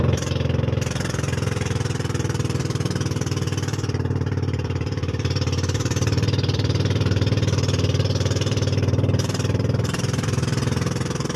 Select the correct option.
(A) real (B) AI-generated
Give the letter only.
B